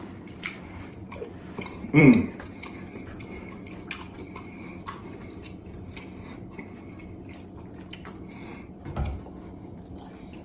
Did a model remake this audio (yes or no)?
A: yes